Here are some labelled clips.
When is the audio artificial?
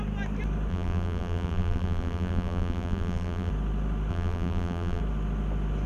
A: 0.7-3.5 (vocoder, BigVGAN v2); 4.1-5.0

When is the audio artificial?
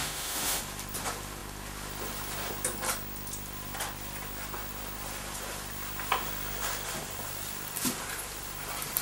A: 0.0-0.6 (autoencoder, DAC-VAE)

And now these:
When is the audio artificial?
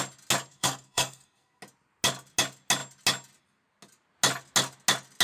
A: 0.5-1.6 (codec, SNAC)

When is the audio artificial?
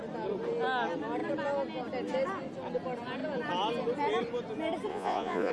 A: 4.9-5.5 (vocoder, Vocos)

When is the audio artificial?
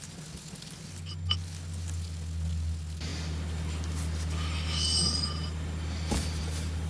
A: none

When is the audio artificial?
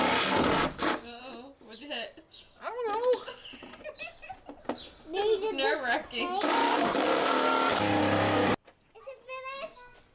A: 0.6-1.2 (codec, DAC); 6.6-8.0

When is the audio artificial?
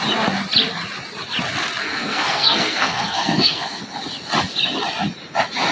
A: 1.8-3.8 (codec, SNAC)